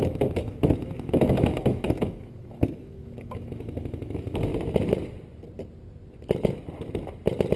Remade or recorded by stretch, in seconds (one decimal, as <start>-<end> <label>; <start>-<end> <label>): 0.0-4.5 remade; 4.5-7.6 recorded